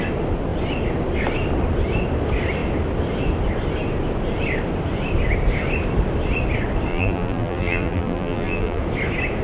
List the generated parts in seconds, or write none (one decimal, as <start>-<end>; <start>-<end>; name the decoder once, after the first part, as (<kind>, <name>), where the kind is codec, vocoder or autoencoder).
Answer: 6.9-8.8 (vocoder, BigVGAN v2)